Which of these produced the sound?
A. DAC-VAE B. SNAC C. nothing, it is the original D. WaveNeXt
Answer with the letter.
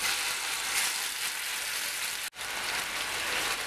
C